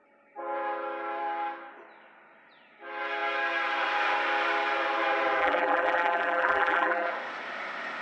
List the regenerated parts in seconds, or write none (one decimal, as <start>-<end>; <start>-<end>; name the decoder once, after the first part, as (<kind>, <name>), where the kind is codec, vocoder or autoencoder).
5.4-7.1 (vocoder, BigVGAN v2)